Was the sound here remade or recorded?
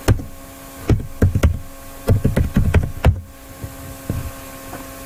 recorded